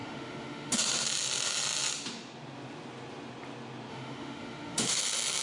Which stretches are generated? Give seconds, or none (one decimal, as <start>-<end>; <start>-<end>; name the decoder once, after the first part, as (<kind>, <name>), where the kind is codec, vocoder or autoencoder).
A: 0.0-0.8 (autoencoder, DAC-VAE); 3.9-5.0